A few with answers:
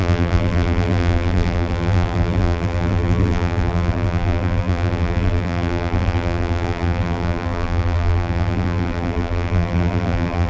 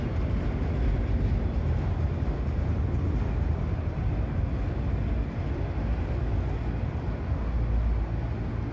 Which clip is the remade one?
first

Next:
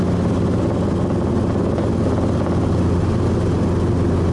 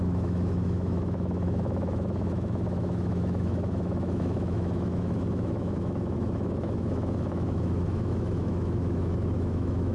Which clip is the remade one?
second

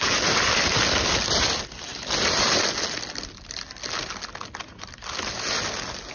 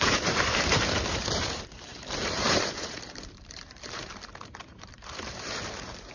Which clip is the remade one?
second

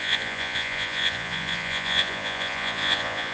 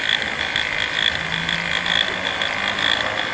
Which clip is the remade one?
first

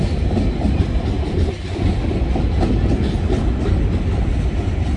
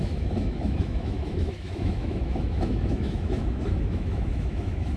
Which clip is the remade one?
second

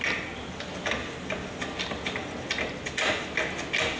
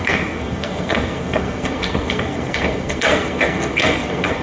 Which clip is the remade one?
second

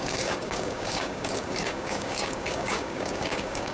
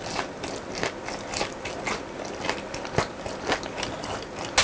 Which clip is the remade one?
first